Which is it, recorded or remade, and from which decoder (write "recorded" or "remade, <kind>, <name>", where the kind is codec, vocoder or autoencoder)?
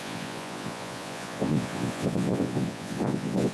remade, vocoder, Vocos